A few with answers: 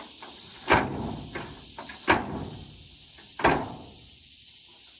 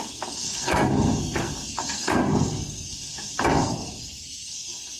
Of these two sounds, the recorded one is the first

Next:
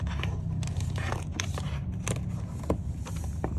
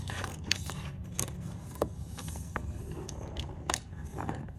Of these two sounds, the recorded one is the first